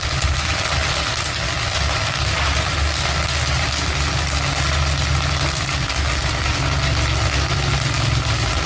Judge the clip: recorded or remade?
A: recorded